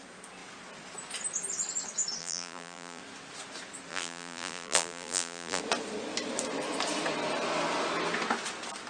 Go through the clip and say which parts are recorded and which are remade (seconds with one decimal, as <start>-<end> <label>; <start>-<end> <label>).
0.0-2.2 recorded; 2.2-3.0 remade; 3.0-3.9 recorded; 3.9-5.6 remade; 5.6-8.9 recorded